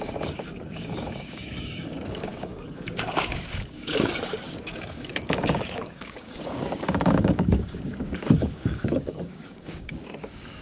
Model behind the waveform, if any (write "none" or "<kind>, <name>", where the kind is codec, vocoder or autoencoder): codec, DAC